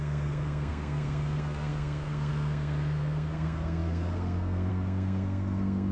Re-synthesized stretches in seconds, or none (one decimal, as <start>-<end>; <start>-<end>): 0.0-5.9